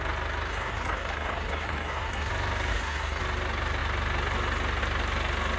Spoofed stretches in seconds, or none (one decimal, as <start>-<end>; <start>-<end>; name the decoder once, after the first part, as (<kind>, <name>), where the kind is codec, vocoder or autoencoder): 0.5-2.3 (codec, SNAC); 2.7-3.2